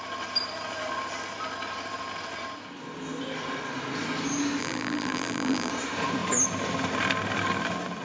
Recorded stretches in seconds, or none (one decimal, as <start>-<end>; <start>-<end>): 0.0-4.6; 5.7-8.0